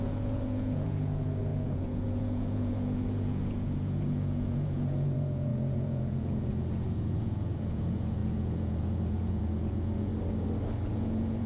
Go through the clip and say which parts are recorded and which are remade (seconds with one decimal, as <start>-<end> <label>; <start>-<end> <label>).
0.0-10.1 remade; 10.1-10.9 recorded; 10.9-11.5 remade